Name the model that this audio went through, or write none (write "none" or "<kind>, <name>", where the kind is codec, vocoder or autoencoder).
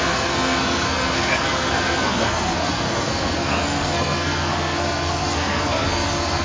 codec, SNAC